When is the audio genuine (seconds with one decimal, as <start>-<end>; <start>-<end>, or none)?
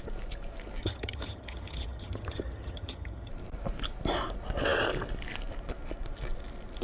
0.0-0.8; 3.3-6.8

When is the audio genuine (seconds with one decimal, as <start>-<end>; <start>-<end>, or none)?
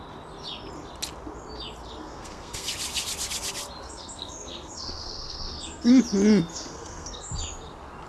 0.0-2.0; 2.7-3.8; 6.0-6.5; 7.3-8.1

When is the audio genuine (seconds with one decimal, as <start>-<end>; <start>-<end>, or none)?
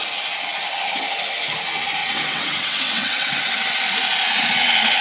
0.0-2.0; 3.8-5.0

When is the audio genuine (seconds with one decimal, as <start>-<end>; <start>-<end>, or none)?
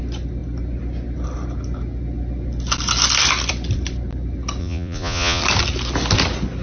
0.0-4.6; 5.4-6.6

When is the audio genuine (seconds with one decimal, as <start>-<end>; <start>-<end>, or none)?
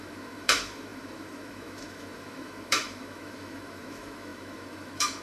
none